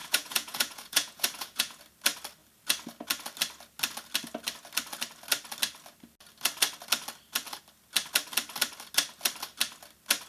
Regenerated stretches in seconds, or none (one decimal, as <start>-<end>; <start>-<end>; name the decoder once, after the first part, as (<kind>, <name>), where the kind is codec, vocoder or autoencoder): 0.0-1.8 (vocoder, Vocos)